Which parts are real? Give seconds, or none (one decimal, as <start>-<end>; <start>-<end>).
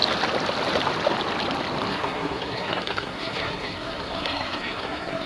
0.0-1.9